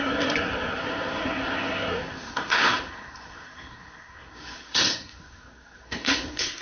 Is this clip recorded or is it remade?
remade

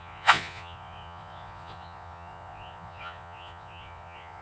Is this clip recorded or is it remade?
remade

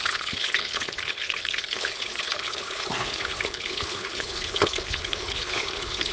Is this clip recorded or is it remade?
remade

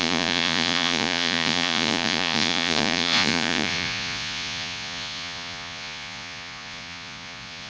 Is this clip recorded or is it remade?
remade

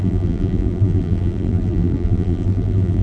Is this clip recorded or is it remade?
remade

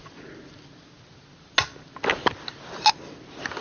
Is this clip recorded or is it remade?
recorded